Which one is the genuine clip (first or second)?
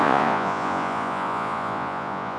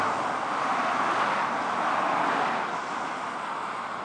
second